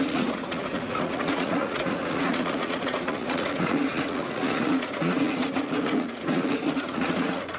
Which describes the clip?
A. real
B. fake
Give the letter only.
B